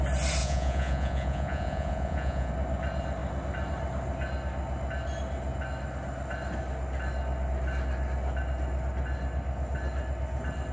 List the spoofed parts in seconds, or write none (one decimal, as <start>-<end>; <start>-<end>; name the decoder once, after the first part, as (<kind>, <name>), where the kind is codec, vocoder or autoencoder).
0.4-2.5 (vocoder, Vocos)